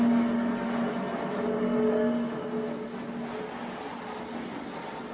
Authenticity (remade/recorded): recorded